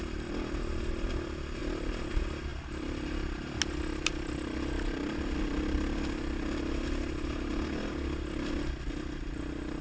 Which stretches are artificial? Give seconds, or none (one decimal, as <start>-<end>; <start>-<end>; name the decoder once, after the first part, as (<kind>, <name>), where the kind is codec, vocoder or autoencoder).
none